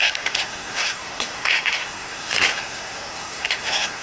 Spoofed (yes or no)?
yes